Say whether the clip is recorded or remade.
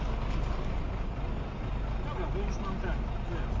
recorded